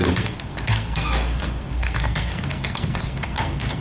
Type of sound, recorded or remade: remade